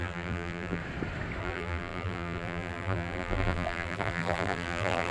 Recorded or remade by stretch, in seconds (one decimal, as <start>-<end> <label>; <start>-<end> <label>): 0.0-0.8 remade; 0.8-1.4 recorded; 1.4-5.1 remade